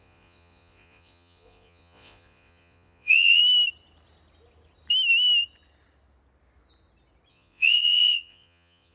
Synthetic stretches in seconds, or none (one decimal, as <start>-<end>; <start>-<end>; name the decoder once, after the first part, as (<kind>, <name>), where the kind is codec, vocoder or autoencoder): 0.0-3.4 (vocoder, Vocos); 7.3-8.9